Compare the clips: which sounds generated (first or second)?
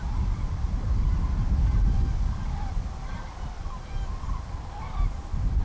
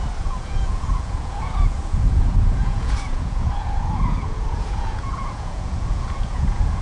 second